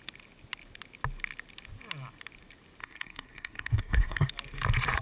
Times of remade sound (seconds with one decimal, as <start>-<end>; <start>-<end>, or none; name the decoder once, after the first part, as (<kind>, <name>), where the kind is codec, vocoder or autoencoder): 2.8-4.3 (codec, SNAC)